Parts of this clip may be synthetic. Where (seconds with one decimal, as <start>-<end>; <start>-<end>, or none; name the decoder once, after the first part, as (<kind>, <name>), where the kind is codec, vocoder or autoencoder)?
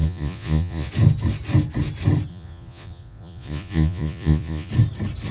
0.0-0.9 (vocoder, Vocos); 2.3-4.7